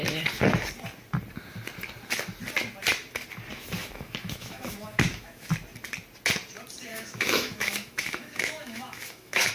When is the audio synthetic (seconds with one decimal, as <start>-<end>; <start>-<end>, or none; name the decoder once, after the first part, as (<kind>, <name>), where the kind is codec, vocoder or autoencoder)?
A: 3.8-5.5 (autoencoder, DAC-VAE); 6.9-9.5